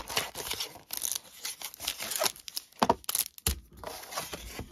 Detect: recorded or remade recorded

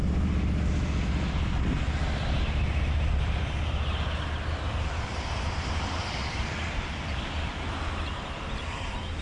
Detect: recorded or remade recorded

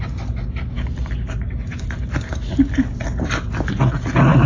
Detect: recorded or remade recorded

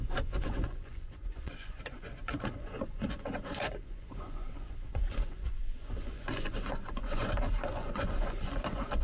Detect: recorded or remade remade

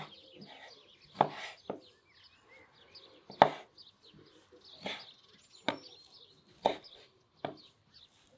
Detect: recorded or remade recorded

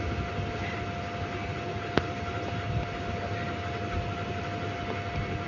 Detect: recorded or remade recorded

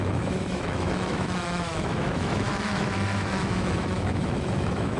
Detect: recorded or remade remade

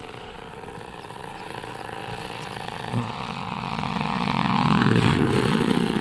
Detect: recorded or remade remade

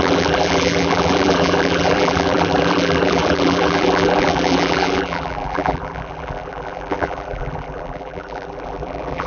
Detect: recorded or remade remade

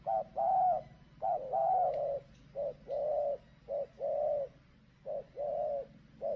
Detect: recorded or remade recorded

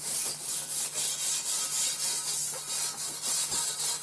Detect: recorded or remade recorded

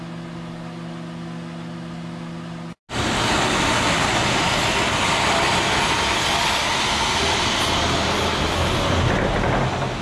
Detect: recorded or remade recorded